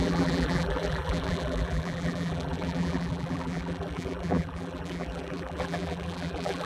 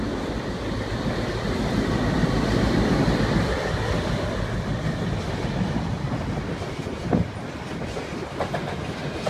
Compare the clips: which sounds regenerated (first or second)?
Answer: first